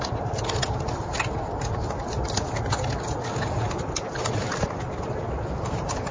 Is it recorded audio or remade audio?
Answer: recorded